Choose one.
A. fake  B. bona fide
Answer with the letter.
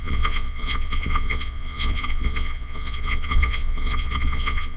A